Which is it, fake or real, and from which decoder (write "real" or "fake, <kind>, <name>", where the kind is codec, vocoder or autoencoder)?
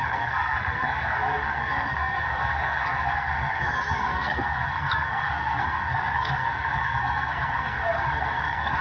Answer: fake, codec, SNAC